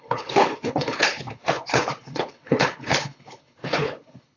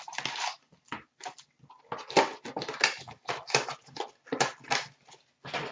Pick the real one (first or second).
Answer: second